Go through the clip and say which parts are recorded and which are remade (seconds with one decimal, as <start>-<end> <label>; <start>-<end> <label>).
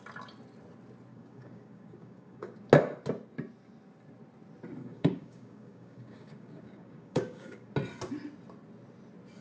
0.0-1.1 recorded; 1.1-2.6 remade; 2.6-4.8 recorded; 4.8-7.7 remade; 7.7-9.4 recorded